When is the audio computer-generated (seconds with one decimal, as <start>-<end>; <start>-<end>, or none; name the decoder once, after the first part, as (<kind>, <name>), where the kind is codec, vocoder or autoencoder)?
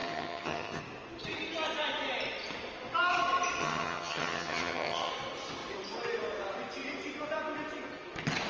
0.0-0.8 (vocoder, HiFi-GAN); 3.6-5.1